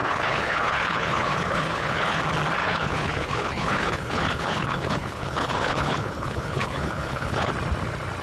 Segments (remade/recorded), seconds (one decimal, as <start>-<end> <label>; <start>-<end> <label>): 0.0-2.2 remade; 2.2-2.6 recorded; 2.6-7.5 remade; 7.5-8.2 recorded